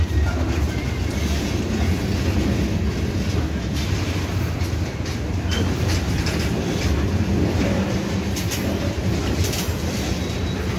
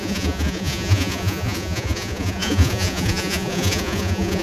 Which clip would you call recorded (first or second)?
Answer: first